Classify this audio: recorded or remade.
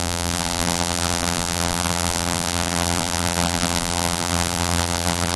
remade